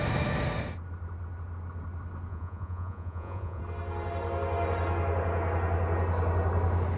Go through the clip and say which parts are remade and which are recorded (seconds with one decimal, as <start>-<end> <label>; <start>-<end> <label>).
0.0-2.3 recorded; 2.3-3.6 remade; 3.6-7.0 recorded